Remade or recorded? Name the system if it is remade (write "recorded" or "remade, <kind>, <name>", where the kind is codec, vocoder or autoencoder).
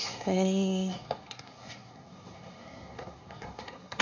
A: remade, codec, SNAC